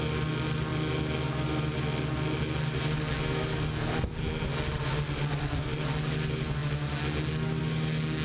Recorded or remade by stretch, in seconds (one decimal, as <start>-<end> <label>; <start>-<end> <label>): 0.0-8.2 recorded